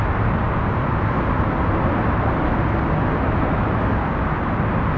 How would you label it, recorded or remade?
recorded